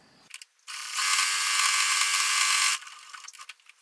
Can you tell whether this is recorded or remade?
recorded